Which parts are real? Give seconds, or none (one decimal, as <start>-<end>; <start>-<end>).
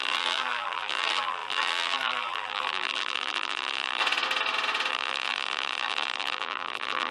4.0-4.9